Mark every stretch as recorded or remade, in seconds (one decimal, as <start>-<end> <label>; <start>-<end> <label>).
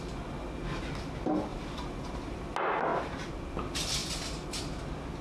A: 0.0-1.5 recorded; 1.5-2.4 remade; 2.4-2.9 recorded; 2.9-3.5 remade; 3.5-4.0 recorded; 4.0-4.5 remade; 4.5-5.2 recorded